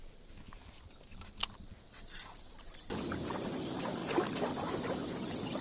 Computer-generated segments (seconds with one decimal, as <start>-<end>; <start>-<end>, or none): none